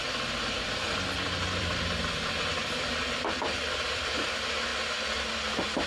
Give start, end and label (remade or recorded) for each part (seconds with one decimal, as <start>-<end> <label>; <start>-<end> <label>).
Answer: 0.0-0.8 recorded; 0.8-4.3 remade; 4.3-5.9 recorded